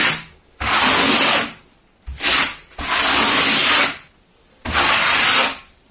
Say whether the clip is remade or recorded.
recorded